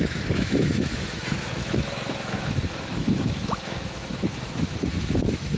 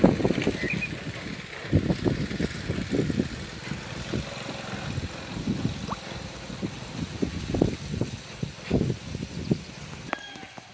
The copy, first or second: first